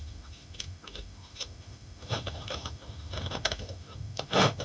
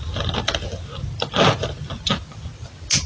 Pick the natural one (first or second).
second